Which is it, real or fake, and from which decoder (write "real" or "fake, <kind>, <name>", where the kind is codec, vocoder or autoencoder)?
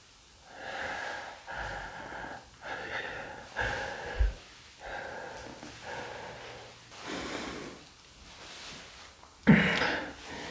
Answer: real